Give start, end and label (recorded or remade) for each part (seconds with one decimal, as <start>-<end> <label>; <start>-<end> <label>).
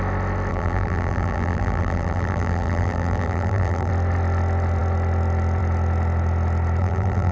0.0-0.5 recorded; 0.5-3.9 remade; 3.9-6.8 recorded; 6.8-7.3 remade